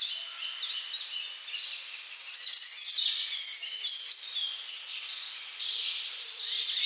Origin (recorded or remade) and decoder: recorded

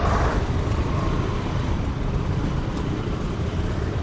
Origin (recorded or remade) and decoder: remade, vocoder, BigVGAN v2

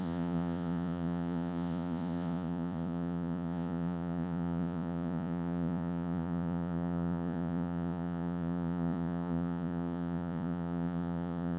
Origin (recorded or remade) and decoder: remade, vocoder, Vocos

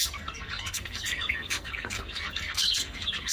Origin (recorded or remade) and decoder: remade, codec, SNAC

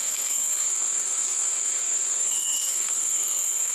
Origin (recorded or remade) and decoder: remade, codec, SNAC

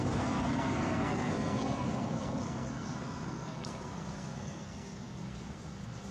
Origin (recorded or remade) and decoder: remade, codec, SNAC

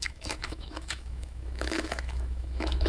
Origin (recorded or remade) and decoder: remade, autoencoder, DAC-VAE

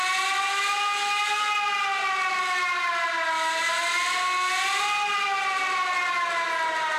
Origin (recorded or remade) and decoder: recorded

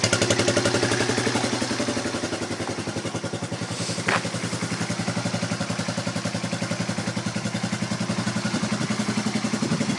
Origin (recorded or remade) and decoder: recorded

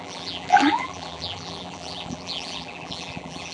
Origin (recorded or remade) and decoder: remade, vocoder, BigVGAN v2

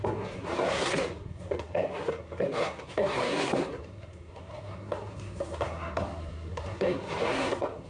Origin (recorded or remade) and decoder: remade, codec, SNAC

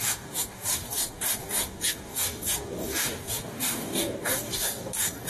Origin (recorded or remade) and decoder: remade, codec, DAC